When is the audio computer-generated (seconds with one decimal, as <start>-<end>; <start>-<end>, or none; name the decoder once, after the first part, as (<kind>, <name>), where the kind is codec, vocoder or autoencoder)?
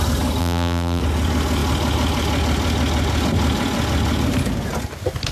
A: 0.4-1.0 (vocoder, BigVGAN v2)